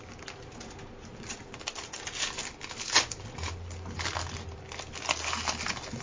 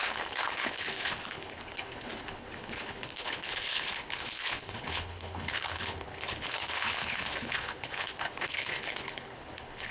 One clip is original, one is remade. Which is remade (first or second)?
second